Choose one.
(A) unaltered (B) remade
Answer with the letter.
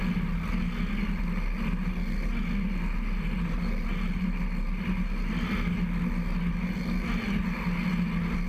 A